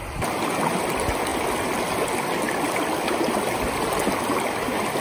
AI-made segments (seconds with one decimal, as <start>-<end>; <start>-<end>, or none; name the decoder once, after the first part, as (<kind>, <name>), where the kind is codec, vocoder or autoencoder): none